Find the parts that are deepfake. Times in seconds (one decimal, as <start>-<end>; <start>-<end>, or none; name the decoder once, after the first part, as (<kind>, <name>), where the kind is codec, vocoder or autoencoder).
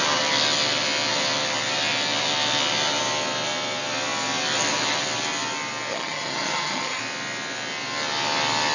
5.9-7.0 (vocoder, HiFi-GAN)